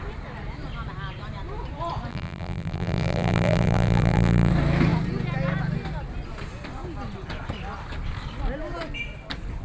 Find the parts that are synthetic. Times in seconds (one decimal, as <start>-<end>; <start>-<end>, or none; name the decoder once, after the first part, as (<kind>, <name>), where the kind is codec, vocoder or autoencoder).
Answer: 2.1-4.5 (vocoder, BigVGAN v2)